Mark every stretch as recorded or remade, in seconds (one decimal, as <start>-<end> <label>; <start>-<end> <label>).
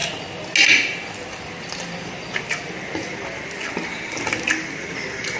0.0-5.4 recorded